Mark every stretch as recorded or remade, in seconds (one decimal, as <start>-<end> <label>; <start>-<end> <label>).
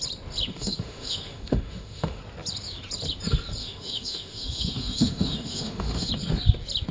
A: 0.0-0.5 recorded; 0.5-2.2 remade; 2.2-3.6 recorded; 3.6-6.1 remade; 6.1-6.9 recorded